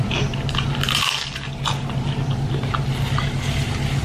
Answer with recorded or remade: recorded